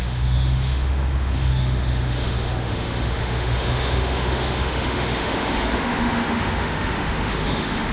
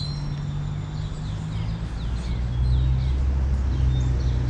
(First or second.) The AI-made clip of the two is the first